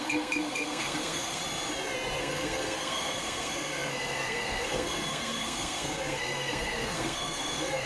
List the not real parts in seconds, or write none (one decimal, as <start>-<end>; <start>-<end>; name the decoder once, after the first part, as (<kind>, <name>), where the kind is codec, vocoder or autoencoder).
0.0-1.4 (codec, SNAC); 2.2-7.9